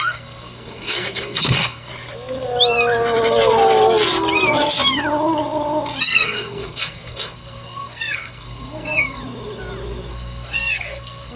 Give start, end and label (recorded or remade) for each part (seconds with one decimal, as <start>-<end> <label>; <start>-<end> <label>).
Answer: 0.0-1.9 remade; 1.9-6.0 recorded; 6.0-9.2 remade; 9.2-10.1 recorded; 10.1-11.4 remade